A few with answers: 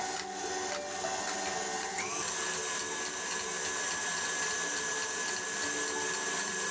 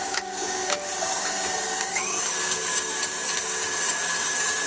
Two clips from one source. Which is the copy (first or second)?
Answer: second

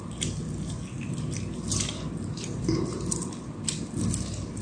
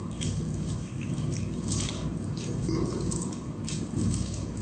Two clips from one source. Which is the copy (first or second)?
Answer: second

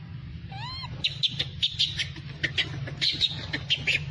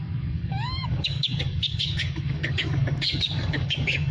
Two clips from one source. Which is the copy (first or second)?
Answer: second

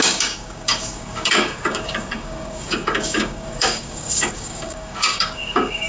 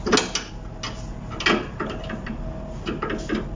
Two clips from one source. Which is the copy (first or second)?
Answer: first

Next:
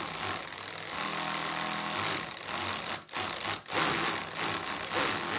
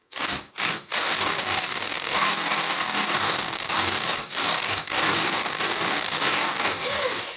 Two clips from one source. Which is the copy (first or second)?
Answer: second